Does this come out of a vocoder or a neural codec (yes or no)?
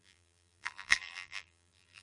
yes